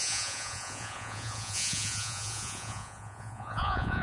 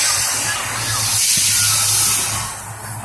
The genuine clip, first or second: second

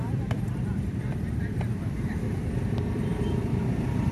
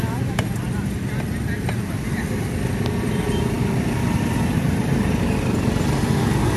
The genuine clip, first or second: second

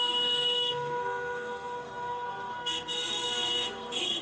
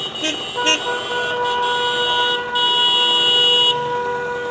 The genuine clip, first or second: second